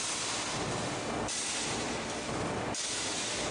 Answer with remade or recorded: recorded